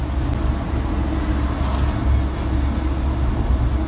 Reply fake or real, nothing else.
real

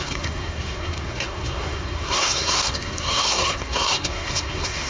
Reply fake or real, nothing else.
fake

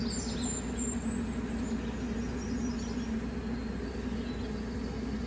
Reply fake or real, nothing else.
real